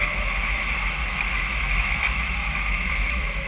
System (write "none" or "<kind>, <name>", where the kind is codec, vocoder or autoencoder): autoencoder, DAC-VAE